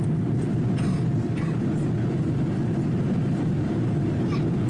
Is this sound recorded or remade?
recorded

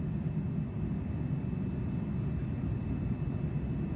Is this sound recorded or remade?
recorded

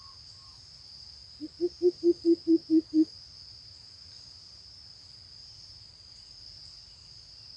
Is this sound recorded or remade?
recorded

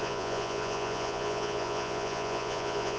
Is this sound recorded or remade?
remade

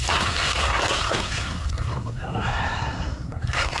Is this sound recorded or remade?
remade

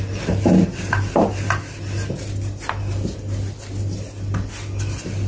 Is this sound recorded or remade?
recorded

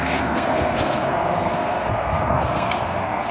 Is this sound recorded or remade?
remade